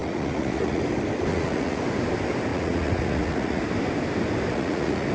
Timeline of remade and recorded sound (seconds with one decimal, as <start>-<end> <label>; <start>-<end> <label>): 0.0-0.8 remade; 0.8-1.3 recorded; 1.3-1.8 remade; 1.8-2.5 recorded; 2.5-3.6 remade; 3.6-4.5 recorded; 4.5-5.1 remade